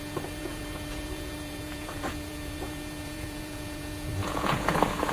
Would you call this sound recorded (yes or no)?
no